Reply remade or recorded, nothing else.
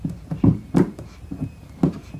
recorded